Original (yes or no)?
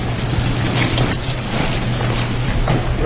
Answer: no